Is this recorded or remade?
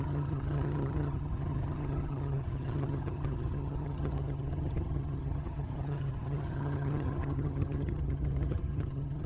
remade